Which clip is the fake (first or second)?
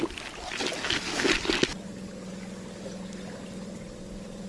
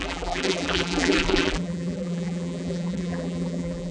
second